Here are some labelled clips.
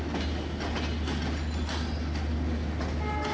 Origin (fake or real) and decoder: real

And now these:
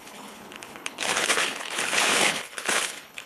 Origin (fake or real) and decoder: fake, codec, HILCodec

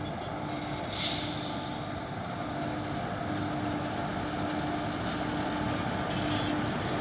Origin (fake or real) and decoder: real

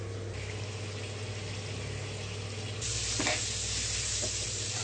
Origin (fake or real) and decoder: real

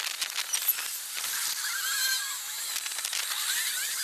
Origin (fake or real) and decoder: real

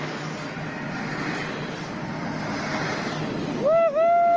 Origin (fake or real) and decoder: real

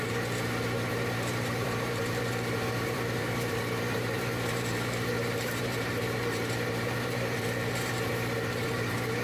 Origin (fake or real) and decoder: fake, vocoder, BigVGAN v2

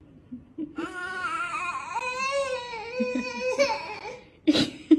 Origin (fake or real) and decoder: real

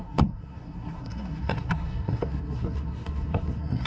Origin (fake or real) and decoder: fake, codec, SNAC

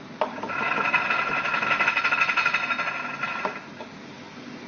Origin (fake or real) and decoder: real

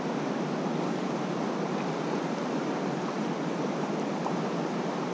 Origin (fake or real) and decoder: real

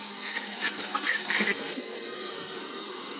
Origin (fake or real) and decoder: fake, codec, SNAC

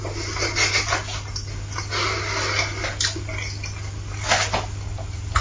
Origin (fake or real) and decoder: real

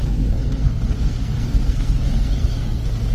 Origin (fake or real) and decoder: fake, codec, SNAC